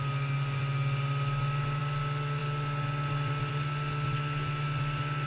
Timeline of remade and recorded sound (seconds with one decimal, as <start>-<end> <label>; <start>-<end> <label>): 0.0-5.3 recorded